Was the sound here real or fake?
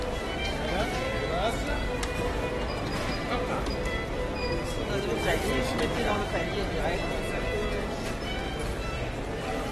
fake